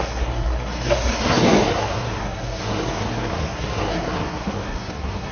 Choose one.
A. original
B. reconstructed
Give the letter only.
B